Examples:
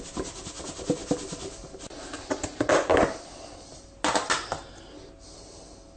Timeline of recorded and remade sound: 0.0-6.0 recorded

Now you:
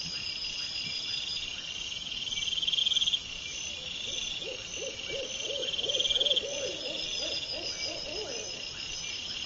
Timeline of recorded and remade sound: 0.0-9.5 recorded

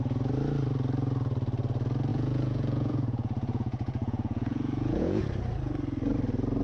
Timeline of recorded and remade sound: 0.0-2.1 recorded; 2.1-5.2 remade; 5.2-6.6 recorded

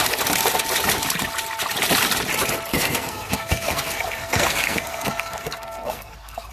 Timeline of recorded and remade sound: 0.0-2.7 recorded; 2.7-6.5 remade

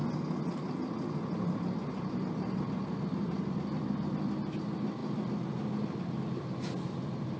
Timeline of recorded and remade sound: 0.0-7.4 recorded

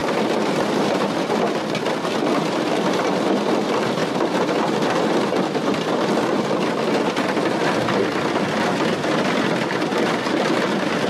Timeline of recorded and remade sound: 0.0-11.1 recorded